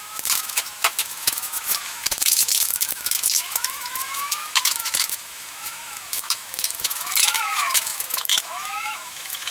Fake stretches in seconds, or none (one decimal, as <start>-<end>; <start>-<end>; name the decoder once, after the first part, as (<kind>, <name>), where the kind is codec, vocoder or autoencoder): 0.0-9.5 (autoencoder, DAC-VAE)